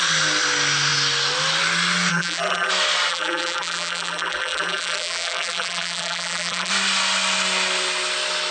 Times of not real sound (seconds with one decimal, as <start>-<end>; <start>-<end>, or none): 2.1-2.7; 3.1-6.7